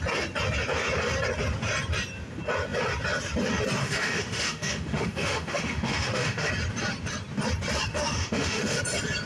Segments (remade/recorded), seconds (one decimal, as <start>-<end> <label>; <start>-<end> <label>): 0.0-3.8 recorded; 3.8-6.5 remade; 6.5-7.9 recorded; 7.9-8.8 remade; 8.8-9.3 recorded